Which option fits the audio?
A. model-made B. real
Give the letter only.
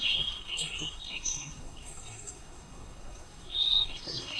A